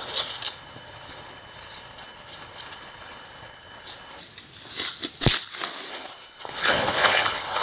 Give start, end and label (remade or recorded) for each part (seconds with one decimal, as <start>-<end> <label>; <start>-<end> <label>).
0.0-4.2 remade; 4.2-5.9 recorded; 5.9-7.6 remade